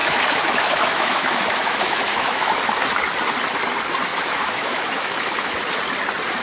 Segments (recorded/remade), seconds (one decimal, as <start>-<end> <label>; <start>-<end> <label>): 0.0-2.6 remade; 2.6-4.1 recorded; 4.1-5.5 remade; 5.5-6.4 recorded